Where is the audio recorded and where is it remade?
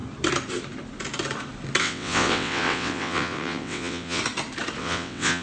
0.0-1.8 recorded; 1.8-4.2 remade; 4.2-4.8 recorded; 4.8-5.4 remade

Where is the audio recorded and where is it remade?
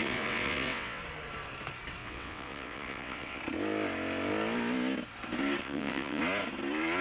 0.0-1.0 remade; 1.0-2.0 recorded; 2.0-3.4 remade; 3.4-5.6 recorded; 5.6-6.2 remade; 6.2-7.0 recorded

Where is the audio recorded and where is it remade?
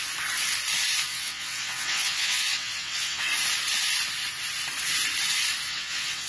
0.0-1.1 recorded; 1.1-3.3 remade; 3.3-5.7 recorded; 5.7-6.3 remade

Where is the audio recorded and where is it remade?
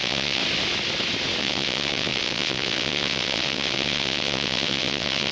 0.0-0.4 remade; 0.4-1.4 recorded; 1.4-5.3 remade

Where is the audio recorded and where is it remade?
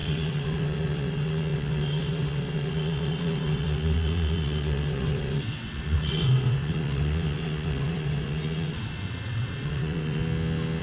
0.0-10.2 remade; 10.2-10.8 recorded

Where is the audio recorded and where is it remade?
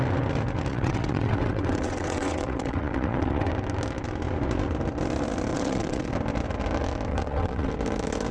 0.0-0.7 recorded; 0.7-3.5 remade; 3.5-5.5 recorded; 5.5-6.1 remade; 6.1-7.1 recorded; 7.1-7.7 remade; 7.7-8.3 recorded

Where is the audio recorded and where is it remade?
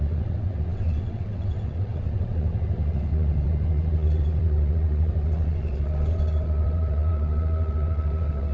0.0-8.5 remade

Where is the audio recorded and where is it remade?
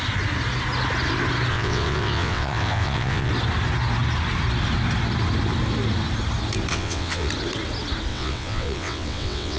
0.0-1.5 recorded; 1.5-3.3 remade; 3.3-6.7 recorded; 6.7-7.3 remade; 7.3-8.1 recorded; 8.1-9.6 remade